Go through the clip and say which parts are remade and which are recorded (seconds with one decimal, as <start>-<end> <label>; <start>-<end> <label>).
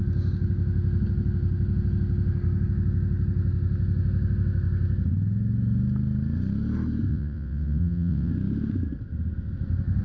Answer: 0.0-7.1 recorded; 7.1-8.3 remade; 8.3-10.0 recorded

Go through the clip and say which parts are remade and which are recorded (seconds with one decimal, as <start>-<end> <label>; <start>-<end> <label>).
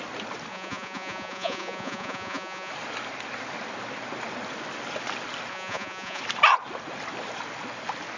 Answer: 0.0-0.5 recorded; 0.5-2.7 remade; 2.7-5.5 recorded; 5.5-6.2 remade; 6.2-8.2 recorded